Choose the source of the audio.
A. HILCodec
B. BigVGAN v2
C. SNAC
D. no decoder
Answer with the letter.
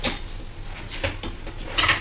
D